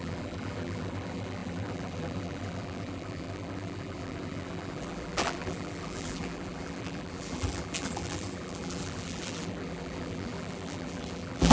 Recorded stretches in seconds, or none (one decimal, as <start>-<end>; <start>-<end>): none